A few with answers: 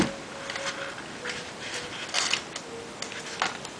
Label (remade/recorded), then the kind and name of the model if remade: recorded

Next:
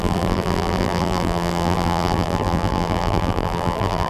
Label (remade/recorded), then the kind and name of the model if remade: remade, vocoder, BigVGAN v2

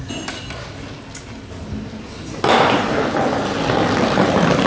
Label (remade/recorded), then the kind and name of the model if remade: recorded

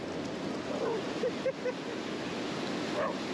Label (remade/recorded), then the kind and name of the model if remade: recorded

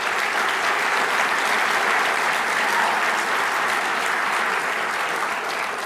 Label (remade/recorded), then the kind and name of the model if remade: recorded